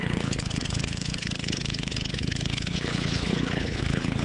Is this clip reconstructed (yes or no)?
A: yes